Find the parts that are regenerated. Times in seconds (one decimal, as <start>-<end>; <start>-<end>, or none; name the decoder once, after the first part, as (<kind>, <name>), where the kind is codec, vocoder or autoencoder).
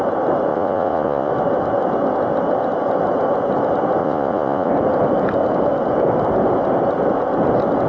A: 0.5-1.3 (vocoder, Vocos); 4.0-4.7